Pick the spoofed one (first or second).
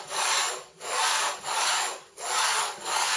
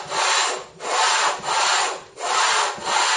first